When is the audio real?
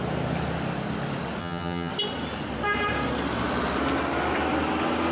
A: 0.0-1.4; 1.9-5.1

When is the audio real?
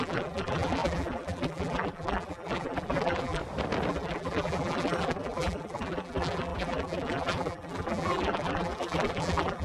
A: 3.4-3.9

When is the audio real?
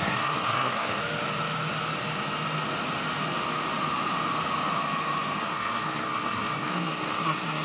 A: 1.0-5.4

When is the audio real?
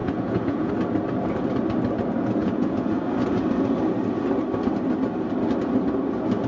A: 0.7-2.4; 3.0-6.5